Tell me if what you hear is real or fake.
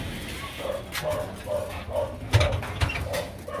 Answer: real